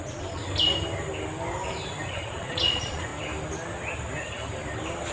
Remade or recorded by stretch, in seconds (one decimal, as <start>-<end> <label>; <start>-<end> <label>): 0.0-0.4 remade; 0.4-2.1 recorded; 2.1-3.1 remade; 3.1-5.1 recorded